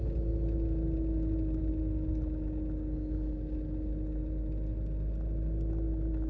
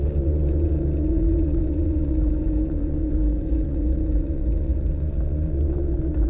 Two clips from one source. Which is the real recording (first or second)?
first